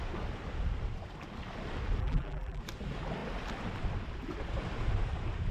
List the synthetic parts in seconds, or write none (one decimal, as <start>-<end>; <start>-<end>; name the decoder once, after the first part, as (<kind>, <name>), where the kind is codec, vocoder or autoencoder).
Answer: 2.0-2.6 (vocoder, BigVGAN v2)